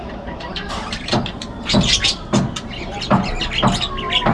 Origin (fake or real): real